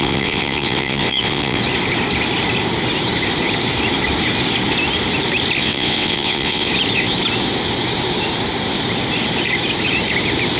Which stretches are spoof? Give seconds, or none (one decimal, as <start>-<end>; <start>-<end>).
0.0-1.6; 5.6-6.7